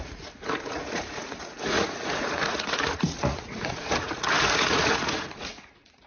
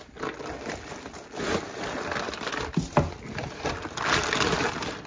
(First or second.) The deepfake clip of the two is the first